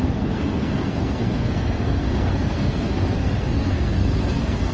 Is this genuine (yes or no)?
no